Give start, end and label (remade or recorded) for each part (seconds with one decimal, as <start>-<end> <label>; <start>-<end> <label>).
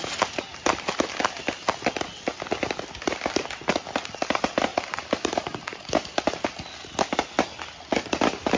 0.0-4.7 recorded; 4.7-6.1 remade; 6.1-8.6 recorded